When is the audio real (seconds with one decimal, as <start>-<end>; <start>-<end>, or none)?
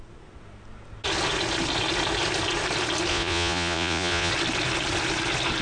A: 0.0-3.1; 4.3-5.6